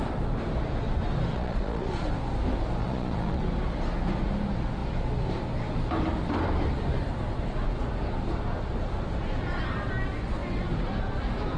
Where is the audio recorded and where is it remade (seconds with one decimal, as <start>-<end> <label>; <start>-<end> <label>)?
0.0-1.3 recorded; 1.3-2.1 remade; 2.1-2.8 recorded; 2.8-3.4 remade; 3.4-11.6 recorded